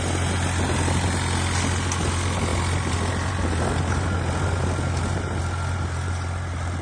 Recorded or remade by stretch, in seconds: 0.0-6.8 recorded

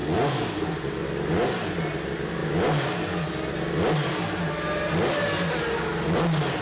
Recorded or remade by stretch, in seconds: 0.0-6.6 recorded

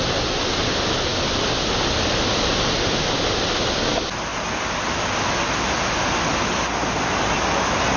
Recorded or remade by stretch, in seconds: 0.0-8.0 recorded

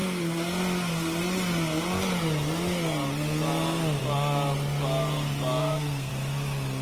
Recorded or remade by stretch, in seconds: 0.0-5.6 recorded; 5.6-6.1 remade; 6.1-6.8 recorded

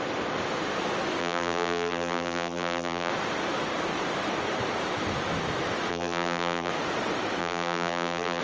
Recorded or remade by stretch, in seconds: 0.0-1.2 recorded; 1.2-3.1 remade; 3.1-5.9 recorded; 5.9-6.7 remade; 6.7-7.4 recorded; 7.4-8.4 remade